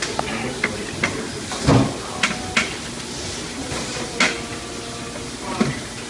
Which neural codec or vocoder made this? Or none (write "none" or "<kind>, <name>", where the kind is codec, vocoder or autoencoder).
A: none